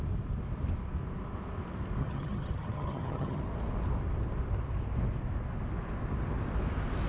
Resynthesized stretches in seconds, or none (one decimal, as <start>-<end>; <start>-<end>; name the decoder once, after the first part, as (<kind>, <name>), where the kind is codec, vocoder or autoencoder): 2.0-3.4 (vocoder, HiFi-GAN)